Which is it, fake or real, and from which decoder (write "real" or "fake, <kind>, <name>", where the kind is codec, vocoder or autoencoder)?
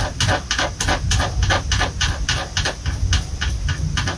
real